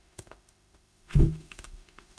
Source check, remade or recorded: remade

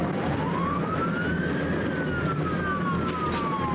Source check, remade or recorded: recorded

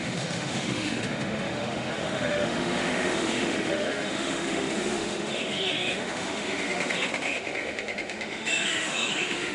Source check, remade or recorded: remade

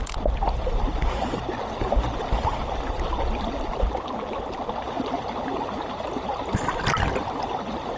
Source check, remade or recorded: recorded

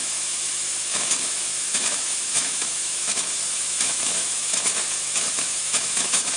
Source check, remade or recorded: remade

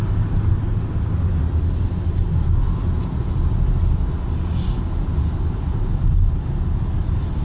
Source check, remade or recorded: recorded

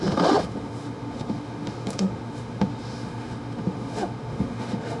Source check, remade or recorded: remade